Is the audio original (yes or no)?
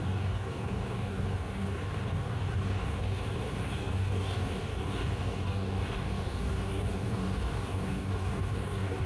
no